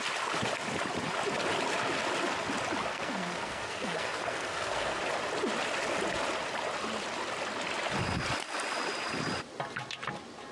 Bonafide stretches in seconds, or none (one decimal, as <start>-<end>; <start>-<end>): 0.0-2.9; 5.0-10.5